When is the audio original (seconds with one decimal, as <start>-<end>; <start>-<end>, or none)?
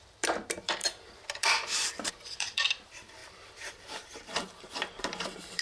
none